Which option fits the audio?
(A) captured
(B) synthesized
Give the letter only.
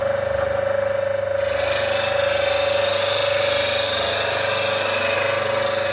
A